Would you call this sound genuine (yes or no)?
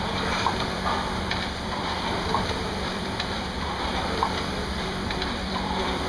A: no